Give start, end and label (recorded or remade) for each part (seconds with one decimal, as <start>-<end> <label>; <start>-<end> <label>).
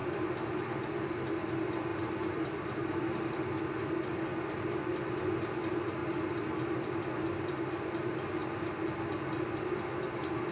0.0-0.9 remade; 0.9-1.9 recorded; 1.9-3.3 remade; 3.3-10.5 recorded